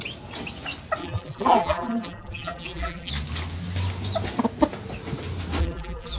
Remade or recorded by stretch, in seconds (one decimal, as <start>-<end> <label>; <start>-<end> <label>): 0.0-1.0 recorded; 1.0-3.1 remade; 3.1-5.6 recorded; 5.6-6.2 remade